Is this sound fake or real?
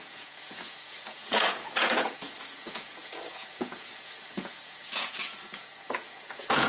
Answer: fake